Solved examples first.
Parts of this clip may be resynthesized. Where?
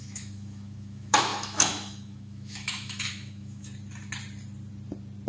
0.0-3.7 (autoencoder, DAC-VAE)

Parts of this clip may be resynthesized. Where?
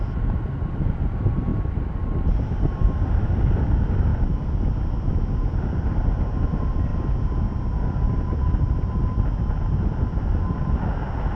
none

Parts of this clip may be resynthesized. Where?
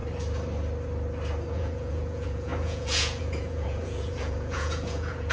1.5-5.3 (vocoder, Vocos)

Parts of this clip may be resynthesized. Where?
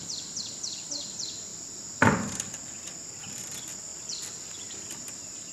0.0-5.5 (vocoder, BigVGAN v2)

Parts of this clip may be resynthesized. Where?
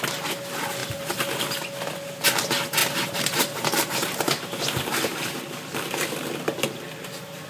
0.8-1.4 (vocoder, BigVGAN v2); 2.8-5.4